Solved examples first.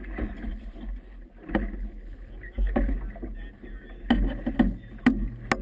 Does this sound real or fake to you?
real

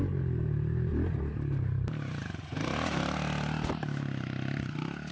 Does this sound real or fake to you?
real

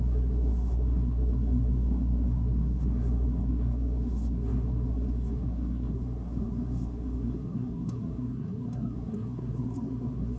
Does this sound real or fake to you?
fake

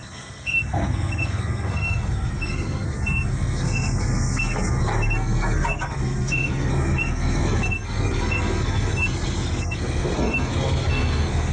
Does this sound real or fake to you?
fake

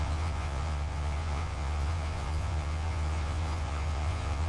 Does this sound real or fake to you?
fake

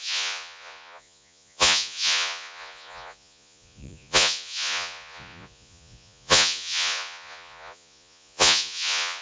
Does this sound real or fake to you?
fake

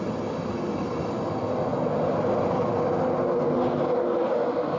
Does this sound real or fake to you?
real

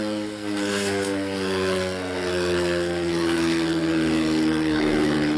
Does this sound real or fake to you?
fake